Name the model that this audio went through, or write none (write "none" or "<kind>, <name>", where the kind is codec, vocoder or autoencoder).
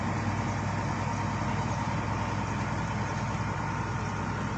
none